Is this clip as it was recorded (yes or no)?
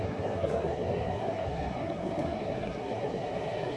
no